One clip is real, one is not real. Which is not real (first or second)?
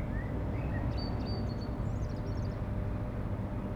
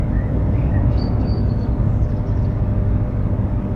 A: second